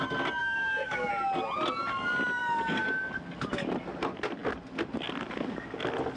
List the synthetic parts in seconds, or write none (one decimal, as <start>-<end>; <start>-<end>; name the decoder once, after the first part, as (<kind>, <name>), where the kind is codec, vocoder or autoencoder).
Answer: 0.4-1.1 (codec, DAC); 2.4-3.1